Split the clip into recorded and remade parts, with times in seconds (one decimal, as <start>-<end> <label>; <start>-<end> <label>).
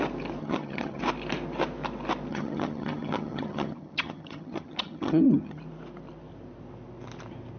0.0-0.4 recorded; 0.4-1.0 remade; 1.0-2.3 recorded; 2.3-5.6 remade; 5.6-7.6 recorded